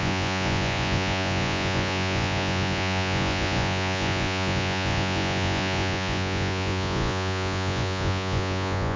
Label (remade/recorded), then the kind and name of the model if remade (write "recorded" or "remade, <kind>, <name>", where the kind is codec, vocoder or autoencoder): remade, vocoder, Vocos